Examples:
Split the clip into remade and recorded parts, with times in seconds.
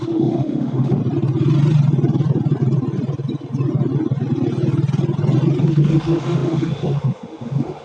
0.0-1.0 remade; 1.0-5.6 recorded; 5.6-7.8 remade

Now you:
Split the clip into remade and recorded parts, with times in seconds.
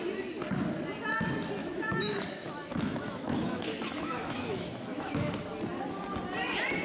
0.0-1.6 recorded; 1.6-5.4 remade; 5.4-6.8 recorded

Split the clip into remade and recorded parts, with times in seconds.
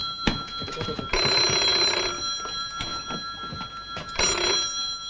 0.0-5.1 recorded